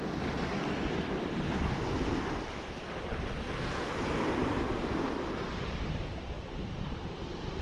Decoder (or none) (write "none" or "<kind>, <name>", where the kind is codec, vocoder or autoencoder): none